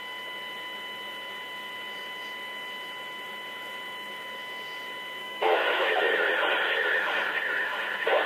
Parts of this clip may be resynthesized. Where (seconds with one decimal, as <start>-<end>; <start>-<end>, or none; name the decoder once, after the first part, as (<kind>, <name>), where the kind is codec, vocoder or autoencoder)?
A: 5.2-5.9 (autoencoder, DAC-VAE)